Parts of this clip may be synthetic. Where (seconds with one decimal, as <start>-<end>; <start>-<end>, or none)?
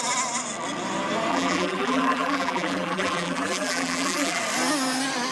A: 1.3-4.4